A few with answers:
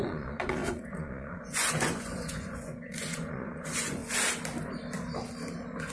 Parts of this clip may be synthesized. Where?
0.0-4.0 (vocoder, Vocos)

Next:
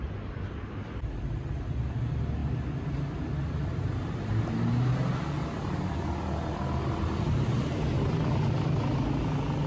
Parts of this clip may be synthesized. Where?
none

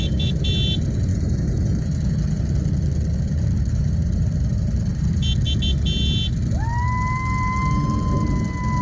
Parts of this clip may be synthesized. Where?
1.1-1.8 (autoencoder, DAC-VAE)

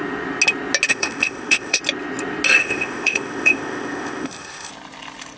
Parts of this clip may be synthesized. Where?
0.9-1.8 (codec, ZipCodec); 2.6-4.7

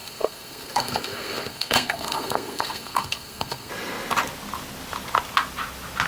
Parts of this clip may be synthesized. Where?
0.0-3.7 (codec, SNAC)

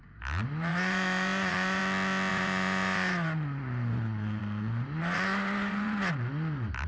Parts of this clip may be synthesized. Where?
0.7-1.8 (vocoder, Vocos); 2.3-4.4; 5.0-6.1

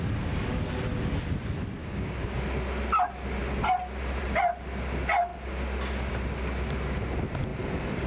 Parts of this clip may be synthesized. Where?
1.8-2.4 (codec, DAC)

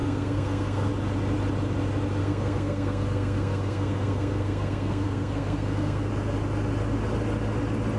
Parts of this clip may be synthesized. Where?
0.0-0.9 (codec, SNAC); 2.2-6.1